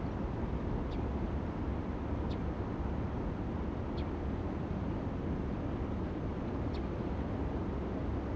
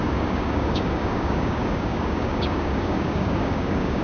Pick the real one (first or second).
first